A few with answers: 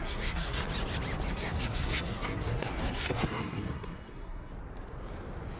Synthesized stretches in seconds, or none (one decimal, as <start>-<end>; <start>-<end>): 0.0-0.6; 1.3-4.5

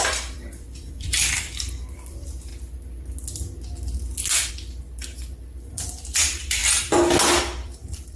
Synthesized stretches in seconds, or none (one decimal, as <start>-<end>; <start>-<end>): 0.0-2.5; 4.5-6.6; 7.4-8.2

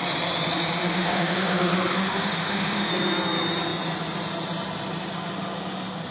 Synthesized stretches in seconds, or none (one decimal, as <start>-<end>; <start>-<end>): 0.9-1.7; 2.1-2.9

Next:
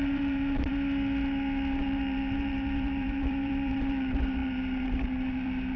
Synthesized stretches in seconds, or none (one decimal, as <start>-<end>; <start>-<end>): 0.0-0.7; 1.8-5.8

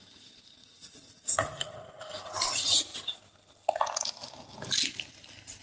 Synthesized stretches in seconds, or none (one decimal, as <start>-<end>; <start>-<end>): 0.6-1.9